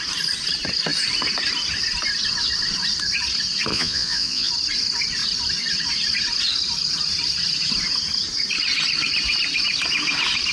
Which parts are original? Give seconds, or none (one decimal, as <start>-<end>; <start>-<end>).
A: 0.0-3.7; 4.5-10.5